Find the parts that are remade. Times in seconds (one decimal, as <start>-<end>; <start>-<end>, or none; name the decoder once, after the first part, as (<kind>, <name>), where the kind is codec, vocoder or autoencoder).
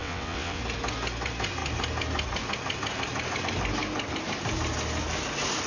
0.0-0.6 (vocoder, WaveNeXt)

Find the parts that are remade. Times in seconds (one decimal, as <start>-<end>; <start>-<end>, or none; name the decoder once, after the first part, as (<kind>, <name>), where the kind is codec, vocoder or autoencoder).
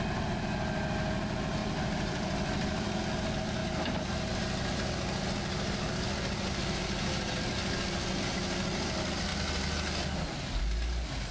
1.6-3.0 (vocoder, BigVGAN v2)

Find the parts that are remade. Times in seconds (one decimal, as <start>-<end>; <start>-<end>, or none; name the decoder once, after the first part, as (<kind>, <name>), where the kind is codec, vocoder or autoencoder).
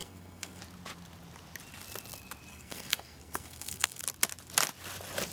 0.0-0.6 (codec, SNAC); 2.5-4.0